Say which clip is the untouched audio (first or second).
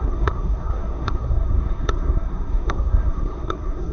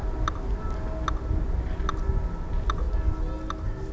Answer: second